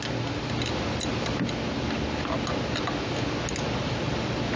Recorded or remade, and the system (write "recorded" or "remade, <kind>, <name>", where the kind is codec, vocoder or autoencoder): recorded